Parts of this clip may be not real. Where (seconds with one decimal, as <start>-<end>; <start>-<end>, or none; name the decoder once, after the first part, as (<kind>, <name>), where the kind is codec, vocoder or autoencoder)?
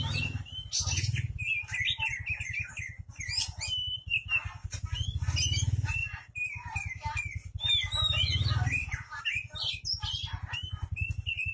none